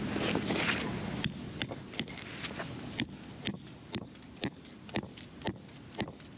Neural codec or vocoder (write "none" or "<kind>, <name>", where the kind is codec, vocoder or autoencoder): none